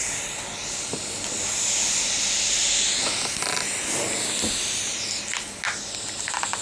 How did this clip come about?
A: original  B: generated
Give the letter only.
A